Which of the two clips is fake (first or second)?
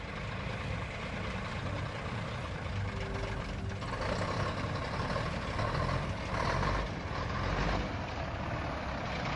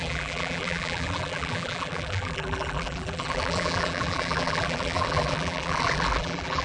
second